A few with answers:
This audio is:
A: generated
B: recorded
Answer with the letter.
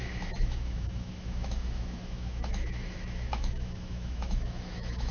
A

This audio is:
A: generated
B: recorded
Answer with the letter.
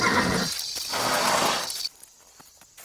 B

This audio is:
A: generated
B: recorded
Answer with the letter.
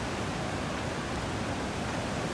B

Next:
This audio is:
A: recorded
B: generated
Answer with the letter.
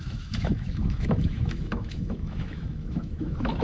B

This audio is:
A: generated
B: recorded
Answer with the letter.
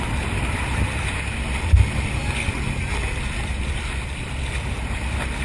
B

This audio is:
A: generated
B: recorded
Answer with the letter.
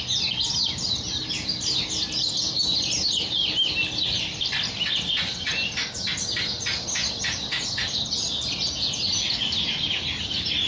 B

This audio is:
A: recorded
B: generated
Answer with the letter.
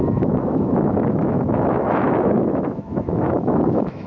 B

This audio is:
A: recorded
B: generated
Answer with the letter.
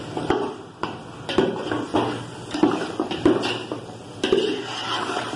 A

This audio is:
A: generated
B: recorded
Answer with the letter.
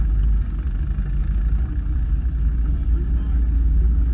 B